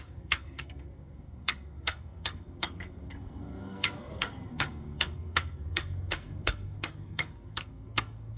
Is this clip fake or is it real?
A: fake